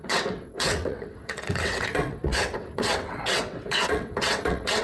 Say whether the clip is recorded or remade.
remade